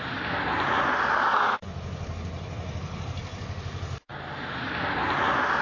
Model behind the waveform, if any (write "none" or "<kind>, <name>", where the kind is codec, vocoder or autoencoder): none